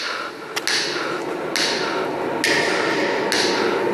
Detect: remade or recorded recorded